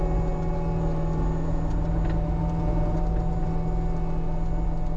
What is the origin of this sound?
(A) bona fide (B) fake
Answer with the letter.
A